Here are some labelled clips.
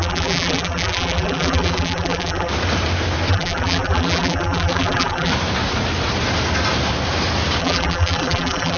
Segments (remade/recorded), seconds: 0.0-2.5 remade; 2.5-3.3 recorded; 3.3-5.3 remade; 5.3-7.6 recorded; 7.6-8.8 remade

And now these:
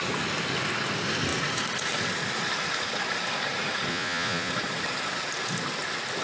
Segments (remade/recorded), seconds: 0.0-3.9 recorded; 3.9-4.5 remade; 4.5-6.2 recorded

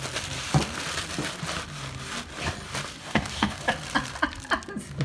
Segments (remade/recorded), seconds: 0.0-3.0 recorded; 3.0-3.6 remade; 3.6-5.0 recorded

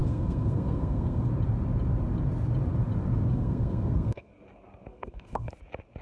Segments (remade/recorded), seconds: 0.0-1.3 remade; 1.3-3.3 recorded; 3.3-4.3 remade; 4.3-4.9 recorded; 4.9-5.5 remade; 5.5-6.0 recorded